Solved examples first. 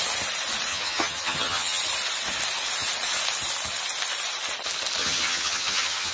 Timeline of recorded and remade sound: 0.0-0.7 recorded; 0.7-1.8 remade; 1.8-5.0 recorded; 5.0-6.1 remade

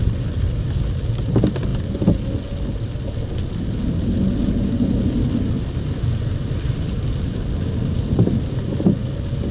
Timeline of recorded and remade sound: 0.0-9.5 recorded

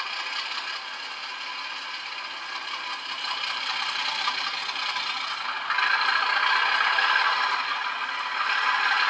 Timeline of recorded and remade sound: 0.0-9.1 recorded

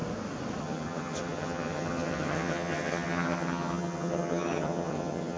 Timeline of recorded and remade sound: 0.0-0.6 recorded; 0.6-5.4 remade

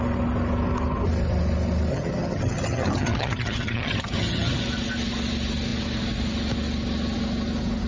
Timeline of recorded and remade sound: 0.0-1.9 recorded; 1.9-4.6 remade; 4.6-7.9 recorded

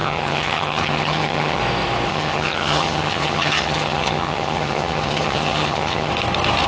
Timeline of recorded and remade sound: 0.0-1.6 remade; 1.6-2.1 recorded; 2.1-6.1 remade; 6.1-6.7 recorded